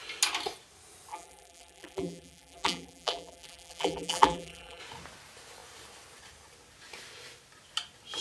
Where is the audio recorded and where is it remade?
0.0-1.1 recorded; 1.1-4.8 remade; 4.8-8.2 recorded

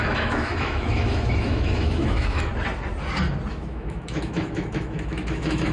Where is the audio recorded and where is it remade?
0.0-2.5 remade; 2.5-3.5 recorded; 3.5-5.7 remade

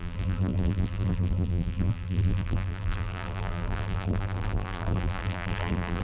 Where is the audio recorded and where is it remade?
0.0-6.0 remade

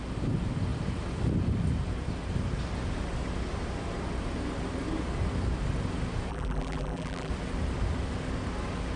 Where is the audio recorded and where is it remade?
0.0-6.3 recorded; 6.3-7.3 remade; 7.3-9.0 recorded